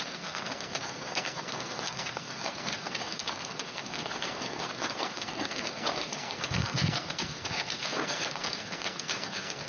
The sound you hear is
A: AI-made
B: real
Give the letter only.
A